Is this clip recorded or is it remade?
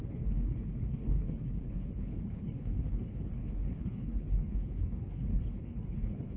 remade